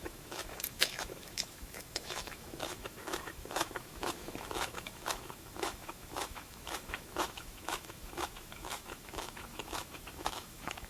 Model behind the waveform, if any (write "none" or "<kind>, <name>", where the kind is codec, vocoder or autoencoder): autoencoder, DAC-VAE